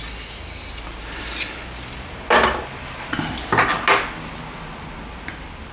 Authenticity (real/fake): real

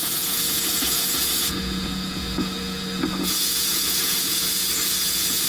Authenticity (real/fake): fake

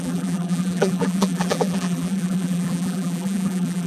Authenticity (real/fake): fake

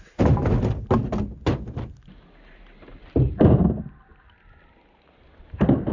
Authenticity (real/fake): real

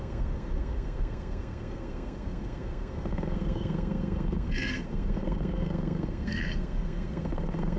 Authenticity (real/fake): fake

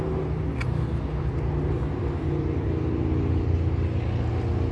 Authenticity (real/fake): real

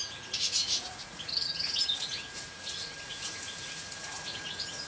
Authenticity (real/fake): fake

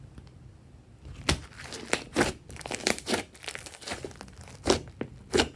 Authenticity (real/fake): real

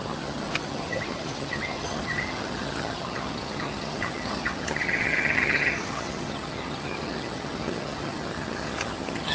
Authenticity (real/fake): fake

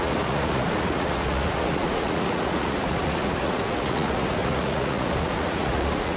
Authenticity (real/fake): fake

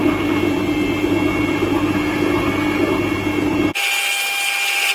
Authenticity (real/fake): real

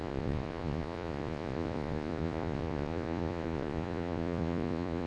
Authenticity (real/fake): fake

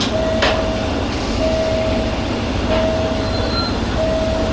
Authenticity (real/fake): real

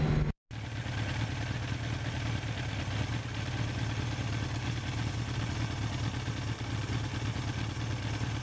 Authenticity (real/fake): real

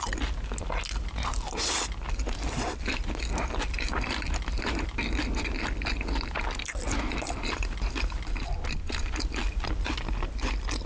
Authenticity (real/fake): real